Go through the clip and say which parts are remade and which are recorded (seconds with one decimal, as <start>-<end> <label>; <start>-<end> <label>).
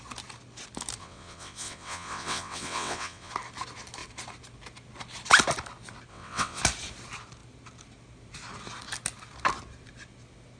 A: 0.0-1.0 recorded; 1.0-3.3 remade; 3.3-6.1 recorded; 6.1-6.6 remade; 6.6-10.6 recorded